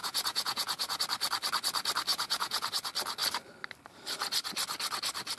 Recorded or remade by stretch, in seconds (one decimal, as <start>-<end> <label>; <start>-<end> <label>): 0.0-1.0 remade; 1.0-2.1 recorded; 2.1-2.7 remade; 2.7-5.4 recorded